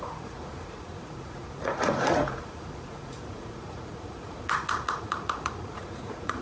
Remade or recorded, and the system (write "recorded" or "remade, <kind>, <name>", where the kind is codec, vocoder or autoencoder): remade, vocoder, Vocos